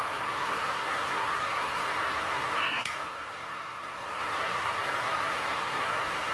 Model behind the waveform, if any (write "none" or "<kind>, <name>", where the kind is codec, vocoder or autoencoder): codec, SNAC